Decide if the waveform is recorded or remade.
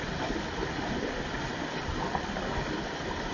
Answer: recorded